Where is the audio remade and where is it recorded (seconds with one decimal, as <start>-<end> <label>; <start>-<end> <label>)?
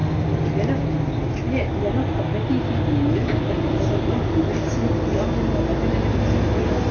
0.0-6.9 recorded